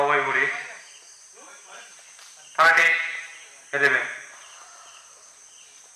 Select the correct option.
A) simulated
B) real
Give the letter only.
A